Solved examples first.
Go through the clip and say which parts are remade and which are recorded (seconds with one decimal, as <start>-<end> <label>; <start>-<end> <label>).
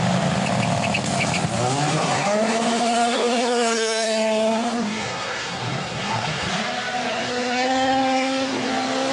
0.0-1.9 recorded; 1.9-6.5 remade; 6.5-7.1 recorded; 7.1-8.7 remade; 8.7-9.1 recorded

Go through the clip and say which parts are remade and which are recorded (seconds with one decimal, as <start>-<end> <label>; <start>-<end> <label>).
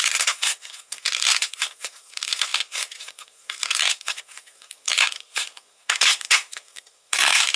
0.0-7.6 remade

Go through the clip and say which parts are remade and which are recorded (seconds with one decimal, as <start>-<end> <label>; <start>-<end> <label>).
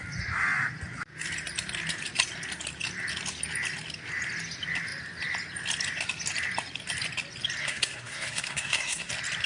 0.0-7.6 recorded; 7.6-9.1 remade; 9.1-9.5 recorded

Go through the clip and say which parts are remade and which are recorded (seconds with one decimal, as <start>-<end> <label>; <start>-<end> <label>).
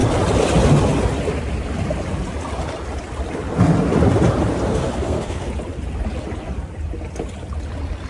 0.0-4.7 recorded; 4.7-5.5 remade; 5.5-8.1 recorded